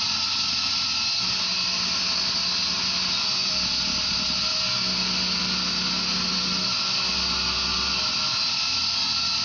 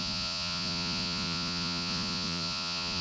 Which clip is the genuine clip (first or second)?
first